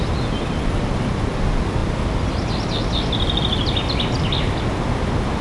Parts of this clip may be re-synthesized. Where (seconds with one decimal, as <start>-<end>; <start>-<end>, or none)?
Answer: none